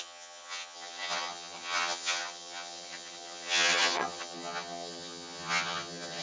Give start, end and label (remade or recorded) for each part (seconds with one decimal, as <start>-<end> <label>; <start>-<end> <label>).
0.0-6.2 remade